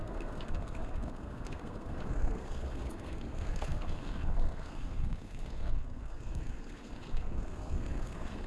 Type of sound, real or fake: fake